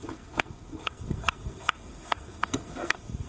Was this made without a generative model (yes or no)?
no